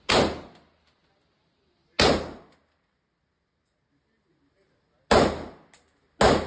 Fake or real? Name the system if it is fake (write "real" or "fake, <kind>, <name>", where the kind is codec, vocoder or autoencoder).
real